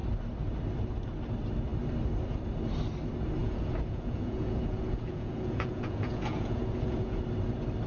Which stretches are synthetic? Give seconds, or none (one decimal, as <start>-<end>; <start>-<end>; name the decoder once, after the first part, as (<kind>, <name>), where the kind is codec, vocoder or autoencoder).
3.4-7.2 (vocoder, Vocos)